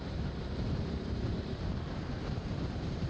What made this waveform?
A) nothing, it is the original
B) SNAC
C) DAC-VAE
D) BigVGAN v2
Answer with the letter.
D